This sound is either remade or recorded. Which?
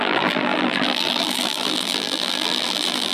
remade